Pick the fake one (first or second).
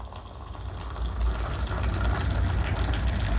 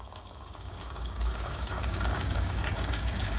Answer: second